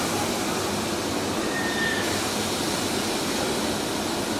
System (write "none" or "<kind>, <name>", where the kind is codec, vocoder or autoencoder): none